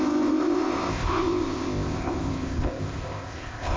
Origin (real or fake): fake